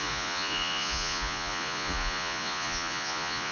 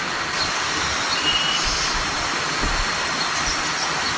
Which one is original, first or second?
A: second